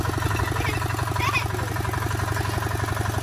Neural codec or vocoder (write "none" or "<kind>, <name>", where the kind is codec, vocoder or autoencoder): none